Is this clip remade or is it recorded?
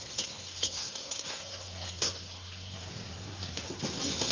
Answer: remade